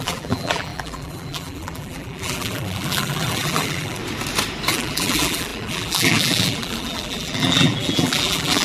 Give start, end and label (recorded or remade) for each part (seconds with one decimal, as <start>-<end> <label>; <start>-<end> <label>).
0.0-4.0 remade; 4.0-4.7 recorded; 4.7-8.6 remade

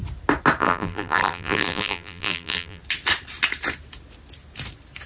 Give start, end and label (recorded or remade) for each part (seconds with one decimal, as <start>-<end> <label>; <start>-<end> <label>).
0.0-0.6 recorded; 0.6-2.8 remade; 2.8-5.1 recorded

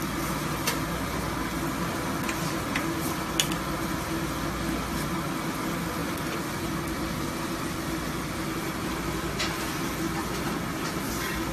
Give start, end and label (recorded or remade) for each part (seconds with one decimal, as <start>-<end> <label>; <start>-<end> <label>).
0.0-6.0 recorded; 6.0-8.0 remade; 8.0-10.2 recorded; 10.2-11.1 remade; 11.1-11.5 recorded

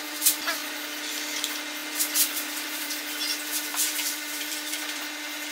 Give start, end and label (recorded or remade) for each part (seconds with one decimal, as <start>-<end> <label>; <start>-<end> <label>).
0.0-1.8 recorded; 1.8-2.9 remade; 2.9-3.7 recorded; 3.7-5.0 remade; 5.0-5.5 recorded

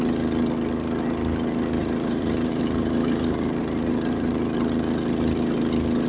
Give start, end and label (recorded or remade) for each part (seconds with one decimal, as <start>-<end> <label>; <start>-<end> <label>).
0.0-1.8 recorded; 1.8-4.3 remade; 4.3-6.1 recorded

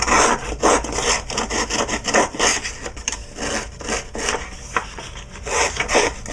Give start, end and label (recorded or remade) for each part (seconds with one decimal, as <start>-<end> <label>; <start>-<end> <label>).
0.0-0.6 remade; 0.6-1.8 recorded; 1.8-2.5 remade; 2.5-5.7 recorded; 5.7-6.3 remade

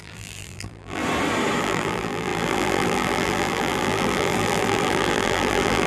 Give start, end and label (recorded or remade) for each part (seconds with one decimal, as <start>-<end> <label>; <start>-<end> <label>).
0.0-1.0 remade; 1.0-1.6 recorded; 1.6-5.9 remade